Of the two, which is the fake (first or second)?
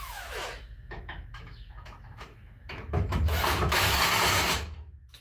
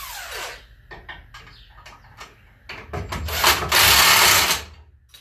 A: first